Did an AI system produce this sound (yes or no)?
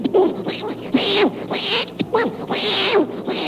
no